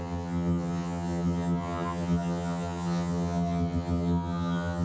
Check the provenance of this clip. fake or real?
fake